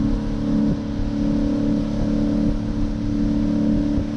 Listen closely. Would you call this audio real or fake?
real